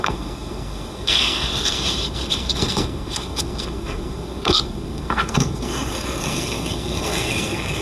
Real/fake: fake